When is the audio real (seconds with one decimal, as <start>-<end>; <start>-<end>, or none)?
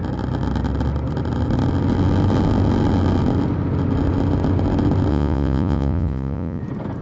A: 0.0-5.1; 6.6-7.0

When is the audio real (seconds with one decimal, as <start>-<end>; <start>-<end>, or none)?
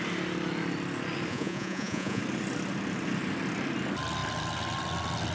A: 0.0-1.3; 2.2-5.3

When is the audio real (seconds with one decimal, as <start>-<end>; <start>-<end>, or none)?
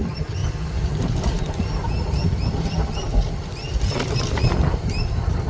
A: 0.0-5.5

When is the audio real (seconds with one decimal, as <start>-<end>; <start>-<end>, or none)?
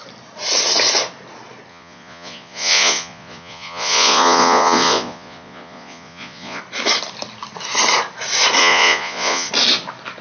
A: 0.0-1.7; 6.6-8.6; 9.5-10.2